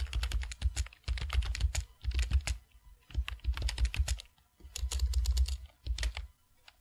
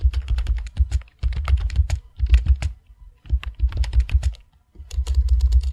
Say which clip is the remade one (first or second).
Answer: second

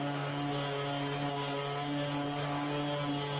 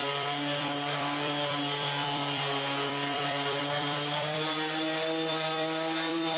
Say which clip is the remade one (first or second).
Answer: second